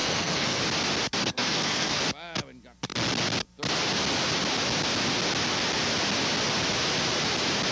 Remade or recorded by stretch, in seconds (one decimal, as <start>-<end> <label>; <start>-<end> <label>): 0.0-0.6 remade; 0.6-1.2 recorded; 1.2-2.0 remade; 2.0-7.7 recorded